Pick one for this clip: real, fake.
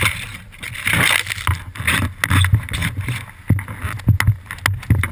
real